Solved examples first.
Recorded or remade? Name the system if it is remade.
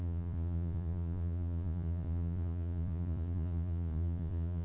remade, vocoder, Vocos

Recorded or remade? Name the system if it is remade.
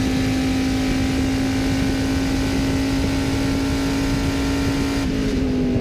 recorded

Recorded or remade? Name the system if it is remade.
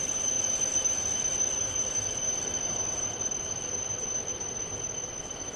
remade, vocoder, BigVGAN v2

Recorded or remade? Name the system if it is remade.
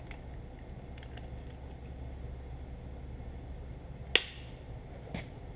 recorded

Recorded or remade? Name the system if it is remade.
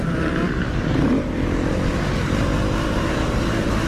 remade, vocoder, BigVGAN v2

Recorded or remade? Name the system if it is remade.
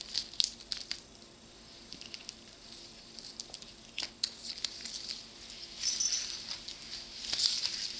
recorded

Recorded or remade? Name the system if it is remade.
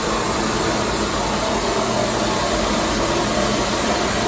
recorded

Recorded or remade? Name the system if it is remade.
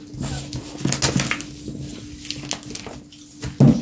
recorded